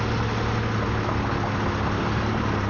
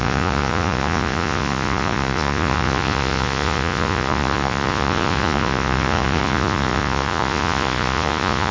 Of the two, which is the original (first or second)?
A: first